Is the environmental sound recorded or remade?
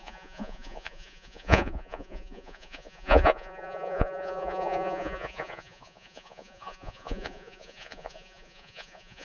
remade